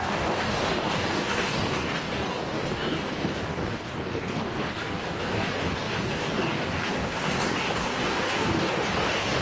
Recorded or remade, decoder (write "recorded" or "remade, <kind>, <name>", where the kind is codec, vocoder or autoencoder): remade, codec, DAC